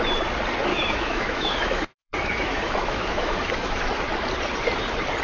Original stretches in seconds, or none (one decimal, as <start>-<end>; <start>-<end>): 0.0-0.7; 3.8-5.2